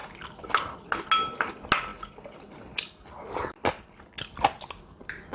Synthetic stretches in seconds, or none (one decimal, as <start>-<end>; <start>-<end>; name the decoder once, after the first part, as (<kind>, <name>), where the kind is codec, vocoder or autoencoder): 1.9-2.7 (vocoder, BigVGAN v2)